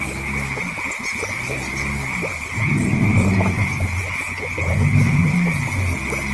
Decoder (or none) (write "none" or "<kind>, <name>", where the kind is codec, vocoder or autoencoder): none